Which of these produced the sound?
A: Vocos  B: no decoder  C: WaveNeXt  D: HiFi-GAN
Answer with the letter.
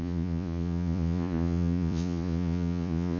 A